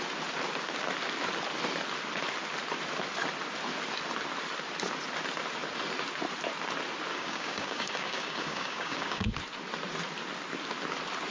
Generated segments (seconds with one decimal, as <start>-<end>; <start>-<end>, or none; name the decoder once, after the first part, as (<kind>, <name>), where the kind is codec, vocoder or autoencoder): 7.1-9.3 (codec, DAC)